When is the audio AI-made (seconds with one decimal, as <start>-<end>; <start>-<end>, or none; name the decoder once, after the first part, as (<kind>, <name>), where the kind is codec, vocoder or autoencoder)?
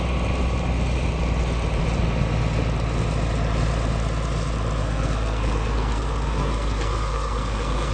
4.8-7.9 (codec, SNAC)